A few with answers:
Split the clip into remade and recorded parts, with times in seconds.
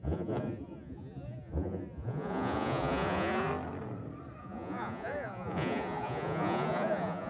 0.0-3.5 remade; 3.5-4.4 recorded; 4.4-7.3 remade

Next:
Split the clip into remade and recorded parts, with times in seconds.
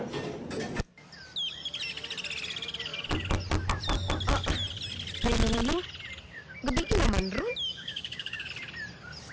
0.0-7.7 recorded; 7.7-8.5 remade; 8.5-9.3 recorded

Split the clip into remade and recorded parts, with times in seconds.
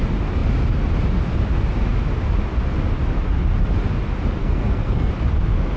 0.0-4.4 recorded; 4.4-5.1 remade; 5.1-5.8 recorded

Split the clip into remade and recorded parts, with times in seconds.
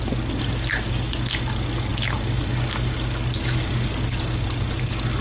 0.0-5.2 recorded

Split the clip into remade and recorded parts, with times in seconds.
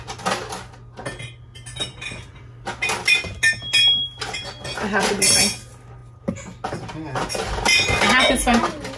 0.0-9.0 recorded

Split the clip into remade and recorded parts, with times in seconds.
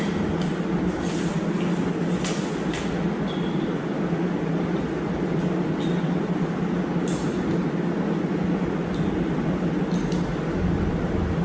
0.0-10.3 recorded; 10.3-11.4 remade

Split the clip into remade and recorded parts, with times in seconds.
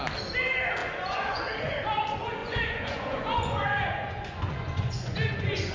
0.0-0.8 recorded; 0.8-1.7 remade; 1.7-2.4 recorded; 2.4-5.7 remade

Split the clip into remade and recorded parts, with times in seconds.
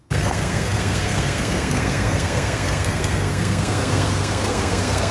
0.0-5.1 remade